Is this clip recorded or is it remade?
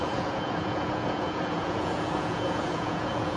remade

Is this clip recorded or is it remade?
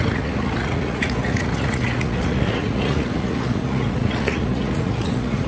remade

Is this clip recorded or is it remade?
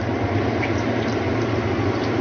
recorded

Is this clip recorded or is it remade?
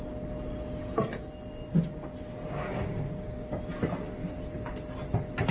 recorded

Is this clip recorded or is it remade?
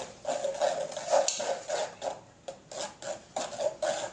recorded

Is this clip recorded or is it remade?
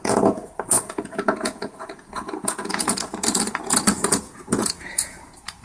remade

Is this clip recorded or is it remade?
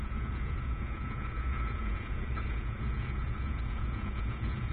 remade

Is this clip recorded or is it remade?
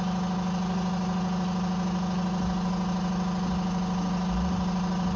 recorded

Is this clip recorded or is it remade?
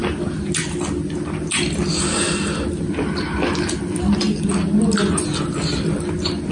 recorded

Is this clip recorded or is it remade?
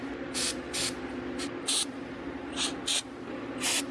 recorded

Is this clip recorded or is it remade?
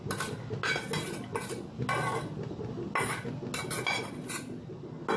recorded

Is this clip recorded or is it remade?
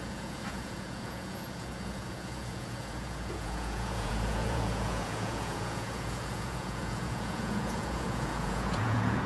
remade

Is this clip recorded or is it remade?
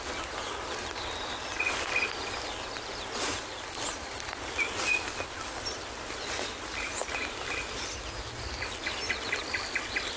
recorded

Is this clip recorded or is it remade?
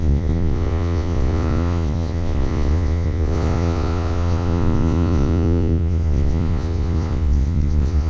remade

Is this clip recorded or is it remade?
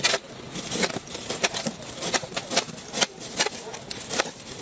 recorded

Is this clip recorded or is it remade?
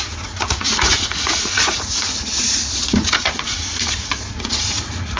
remade